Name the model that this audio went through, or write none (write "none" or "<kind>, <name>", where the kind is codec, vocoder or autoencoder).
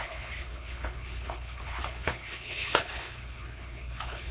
codec, HILCodec